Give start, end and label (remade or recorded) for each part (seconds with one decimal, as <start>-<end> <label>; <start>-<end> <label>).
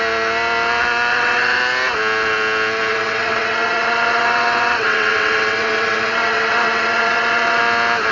0.0-1.1 recorded; 1.1-1.6 remade; 1.6-2.9 recorded; 2.9-7.6 remade; 7.6-8.1 recorded